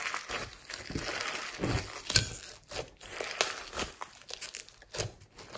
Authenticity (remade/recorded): recorded